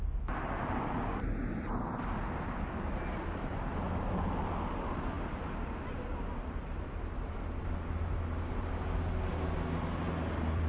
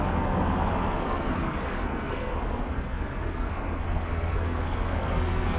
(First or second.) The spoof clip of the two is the second